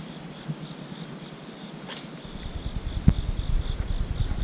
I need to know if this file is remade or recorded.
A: recorded